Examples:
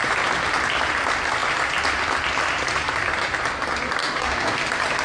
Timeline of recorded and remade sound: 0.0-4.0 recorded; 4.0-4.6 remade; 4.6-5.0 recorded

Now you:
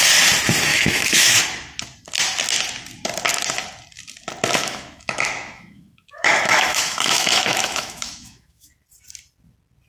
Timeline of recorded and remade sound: 0.0-0.7 recorded; 0.7-1.4 remade; 1.4-4.6 recorded; 4.6-8.7 remade; 8.7-9.9 recorded

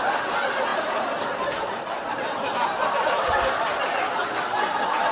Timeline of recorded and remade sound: 0.0-5.1 recorded